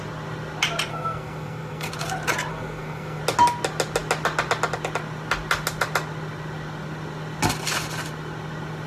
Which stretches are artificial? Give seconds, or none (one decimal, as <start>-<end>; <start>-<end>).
0.9-1.9; 2.5-3.2